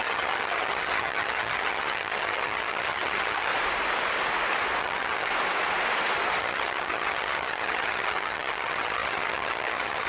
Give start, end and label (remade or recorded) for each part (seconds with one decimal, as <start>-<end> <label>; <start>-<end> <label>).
0.0-3.5 remade; 3.5-4.8 recorded; 4.8-5.3 remade; 5.3-6.4 recorded; 6.4-10.1 remade